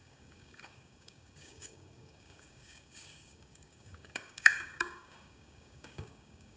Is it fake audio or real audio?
fake